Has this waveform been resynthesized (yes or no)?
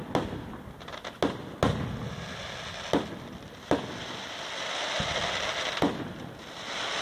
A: no